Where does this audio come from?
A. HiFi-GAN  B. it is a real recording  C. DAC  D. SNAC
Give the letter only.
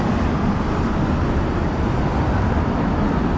B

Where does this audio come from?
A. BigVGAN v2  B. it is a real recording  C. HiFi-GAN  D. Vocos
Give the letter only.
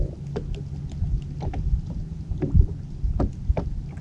B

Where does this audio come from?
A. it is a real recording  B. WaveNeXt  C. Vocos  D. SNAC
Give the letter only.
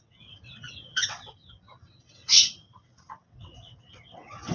B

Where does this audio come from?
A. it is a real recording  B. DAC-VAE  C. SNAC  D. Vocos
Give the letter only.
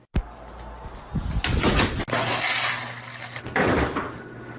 A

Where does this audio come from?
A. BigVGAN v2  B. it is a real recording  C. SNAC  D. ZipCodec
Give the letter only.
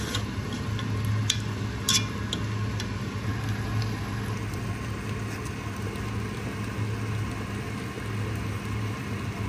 B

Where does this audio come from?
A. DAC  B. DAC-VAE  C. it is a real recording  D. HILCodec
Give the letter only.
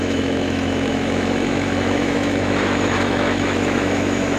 B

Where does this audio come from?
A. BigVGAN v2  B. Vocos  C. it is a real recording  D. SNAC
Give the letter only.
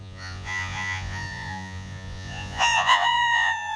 B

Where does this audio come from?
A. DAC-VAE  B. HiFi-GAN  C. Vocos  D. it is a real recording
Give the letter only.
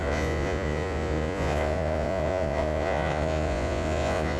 C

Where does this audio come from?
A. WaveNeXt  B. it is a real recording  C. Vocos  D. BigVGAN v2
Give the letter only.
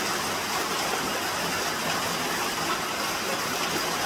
B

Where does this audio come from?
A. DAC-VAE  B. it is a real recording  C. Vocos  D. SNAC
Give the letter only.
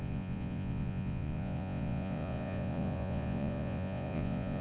C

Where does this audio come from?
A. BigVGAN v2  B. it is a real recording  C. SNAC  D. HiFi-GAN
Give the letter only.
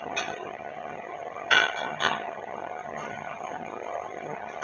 D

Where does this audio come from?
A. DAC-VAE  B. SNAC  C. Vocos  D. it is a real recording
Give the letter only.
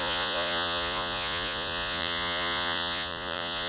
C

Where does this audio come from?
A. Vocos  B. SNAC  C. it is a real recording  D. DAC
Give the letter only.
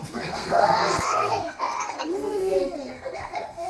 B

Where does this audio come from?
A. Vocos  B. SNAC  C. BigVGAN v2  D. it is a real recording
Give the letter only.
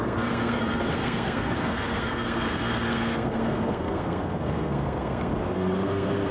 B